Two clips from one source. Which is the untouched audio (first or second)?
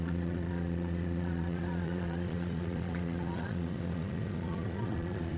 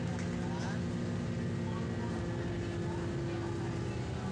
second